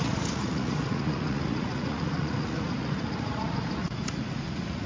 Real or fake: fake